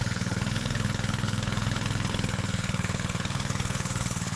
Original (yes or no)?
no